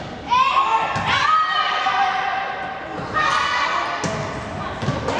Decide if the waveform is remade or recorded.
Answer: recorded